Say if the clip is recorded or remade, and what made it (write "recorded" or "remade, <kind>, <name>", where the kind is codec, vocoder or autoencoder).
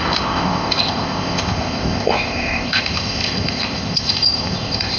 remade, codec, ZipCodec